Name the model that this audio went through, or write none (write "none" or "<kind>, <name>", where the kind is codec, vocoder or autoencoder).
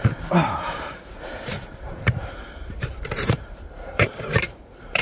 vocoder, BigVGAN v2